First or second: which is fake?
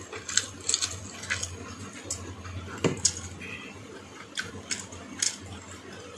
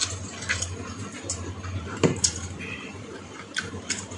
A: second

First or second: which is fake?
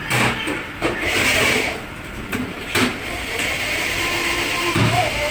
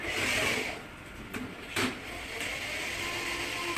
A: first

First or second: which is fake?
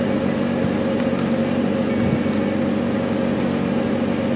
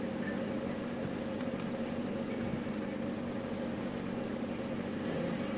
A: second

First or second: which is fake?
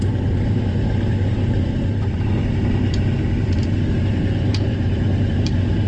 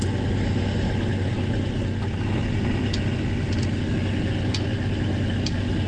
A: first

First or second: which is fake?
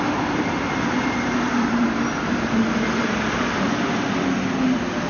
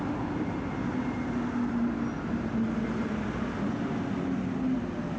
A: first